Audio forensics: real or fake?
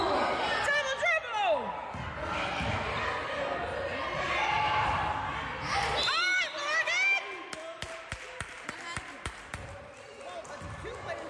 real